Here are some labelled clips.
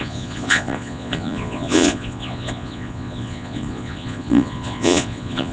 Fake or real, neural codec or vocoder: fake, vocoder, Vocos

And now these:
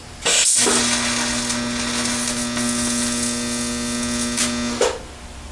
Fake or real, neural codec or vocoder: real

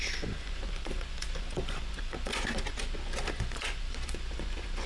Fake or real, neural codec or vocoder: fake, vocoder, Vocos